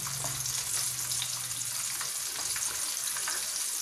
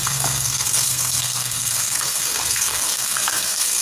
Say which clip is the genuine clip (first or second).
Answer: first